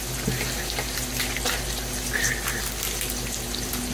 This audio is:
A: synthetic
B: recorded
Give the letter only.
B